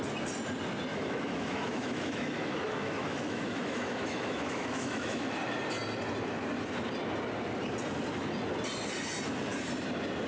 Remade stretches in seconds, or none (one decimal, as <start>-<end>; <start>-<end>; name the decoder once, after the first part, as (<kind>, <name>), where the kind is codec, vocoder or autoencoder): 0.9-5.3 (autoencoder, DAC-VAE)